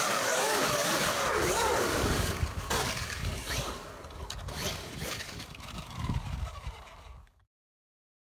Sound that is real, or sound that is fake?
fake